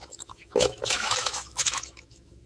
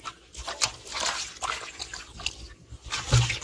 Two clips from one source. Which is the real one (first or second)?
second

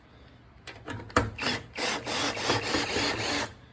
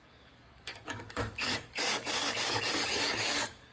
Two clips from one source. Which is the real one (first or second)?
first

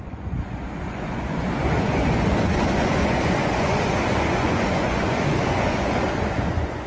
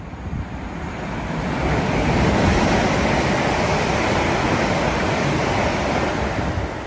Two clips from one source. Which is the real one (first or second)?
second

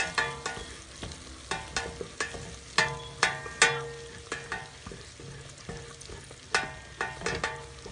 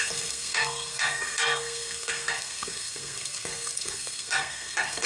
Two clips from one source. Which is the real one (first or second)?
first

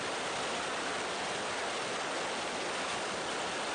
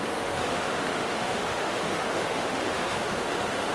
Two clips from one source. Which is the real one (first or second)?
first